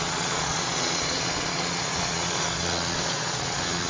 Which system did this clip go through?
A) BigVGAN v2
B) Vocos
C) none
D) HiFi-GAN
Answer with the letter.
B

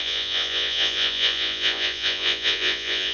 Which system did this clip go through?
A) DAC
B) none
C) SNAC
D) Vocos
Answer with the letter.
D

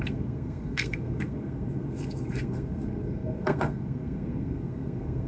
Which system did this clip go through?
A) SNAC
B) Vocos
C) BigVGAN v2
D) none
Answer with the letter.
A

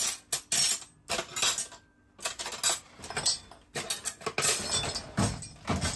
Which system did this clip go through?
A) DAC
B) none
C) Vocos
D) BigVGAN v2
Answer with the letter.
B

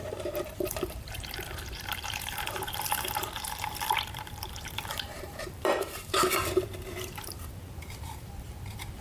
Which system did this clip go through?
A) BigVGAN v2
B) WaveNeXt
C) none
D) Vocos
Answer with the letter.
A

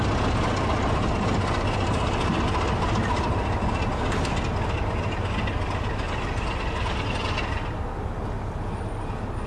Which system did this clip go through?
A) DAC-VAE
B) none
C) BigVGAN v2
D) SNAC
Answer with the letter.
B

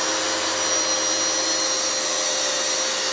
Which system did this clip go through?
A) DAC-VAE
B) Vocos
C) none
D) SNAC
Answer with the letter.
C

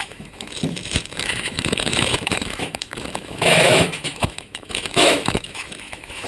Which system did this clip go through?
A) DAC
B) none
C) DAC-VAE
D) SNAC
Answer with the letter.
C